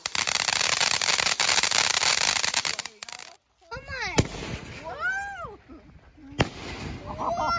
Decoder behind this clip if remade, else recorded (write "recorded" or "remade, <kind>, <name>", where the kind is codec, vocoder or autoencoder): recorded